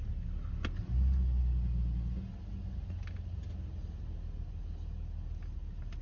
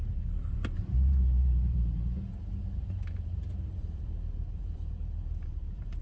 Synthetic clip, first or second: second